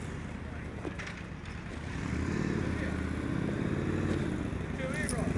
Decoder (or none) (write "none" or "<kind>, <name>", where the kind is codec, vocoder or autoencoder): none